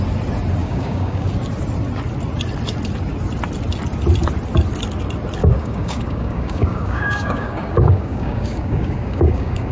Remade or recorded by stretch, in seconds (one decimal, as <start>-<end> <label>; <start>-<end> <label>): 0.0-0.6 recorded; 0.6-1.3 remade; 1.3-5.4 recorded; 5.4-9.7 remade